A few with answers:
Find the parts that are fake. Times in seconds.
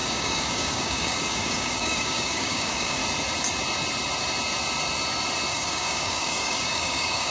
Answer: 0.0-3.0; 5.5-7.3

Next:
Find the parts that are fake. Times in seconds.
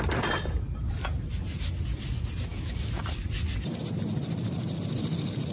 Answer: none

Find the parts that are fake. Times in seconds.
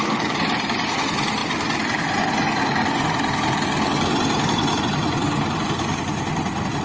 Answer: none